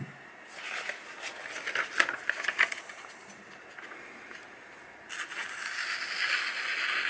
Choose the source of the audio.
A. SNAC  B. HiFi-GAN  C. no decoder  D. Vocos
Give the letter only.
C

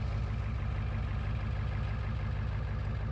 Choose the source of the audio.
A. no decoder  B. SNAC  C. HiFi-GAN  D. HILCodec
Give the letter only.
A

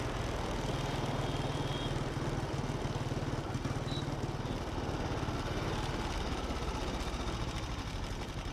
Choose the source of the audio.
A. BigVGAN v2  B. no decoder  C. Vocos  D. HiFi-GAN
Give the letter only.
B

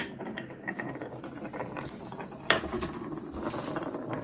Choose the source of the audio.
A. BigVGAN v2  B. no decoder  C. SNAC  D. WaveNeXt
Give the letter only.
A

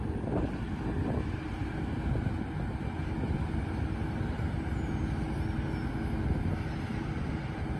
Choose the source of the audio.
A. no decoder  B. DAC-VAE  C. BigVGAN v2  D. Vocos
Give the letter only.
A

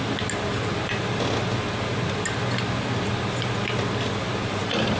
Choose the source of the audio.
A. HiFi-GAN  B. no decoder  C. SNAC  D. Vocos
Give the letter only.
B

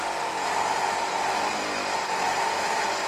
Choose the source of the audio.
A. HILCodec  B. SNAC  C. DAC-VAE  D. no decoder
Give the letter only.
D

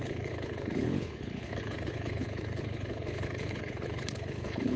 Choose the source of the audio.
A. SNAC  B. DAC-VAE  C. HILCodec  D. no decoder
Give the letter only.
C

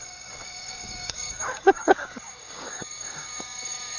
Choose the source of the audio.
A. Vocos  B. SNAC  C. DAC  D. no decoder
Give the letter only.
C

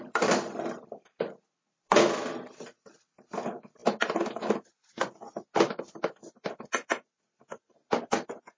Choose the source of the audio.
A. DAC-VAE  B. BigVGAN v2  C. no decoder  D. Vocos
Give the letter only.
B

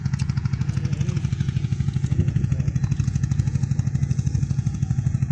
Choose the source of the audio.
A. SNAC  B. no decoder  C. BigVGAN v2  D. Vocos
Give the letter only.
D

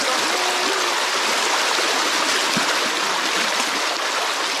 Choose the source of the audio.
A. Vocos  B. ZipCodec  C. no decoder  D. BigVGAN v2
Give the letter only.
C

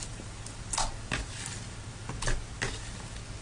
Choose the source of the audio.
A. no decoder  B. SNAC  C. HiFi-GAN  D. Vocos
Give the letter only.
A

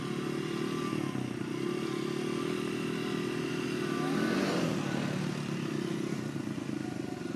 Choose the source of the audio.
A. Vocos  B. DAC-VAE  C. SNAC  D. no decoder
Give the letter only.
D